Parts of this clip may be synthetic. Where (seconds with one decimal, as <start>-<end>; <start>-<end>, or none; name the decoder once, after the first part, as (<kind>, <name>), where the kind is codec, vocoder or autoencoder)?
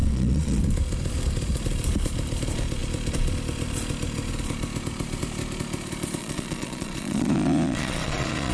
0.0-0.6 (vocoder, Vocos); 6.2-8.5